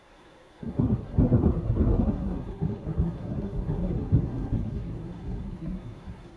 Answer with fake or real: fake